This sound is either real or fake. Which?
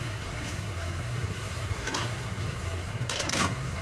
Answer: fake